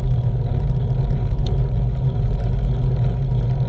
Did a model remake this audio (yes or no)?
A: no